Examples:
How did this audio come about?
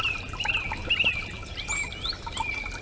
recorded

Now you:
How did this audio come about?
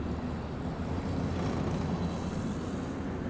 recorded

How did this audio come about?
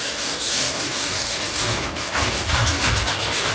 remade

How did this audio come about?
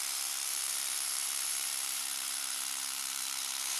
remade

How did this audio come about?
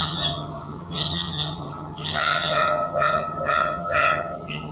remade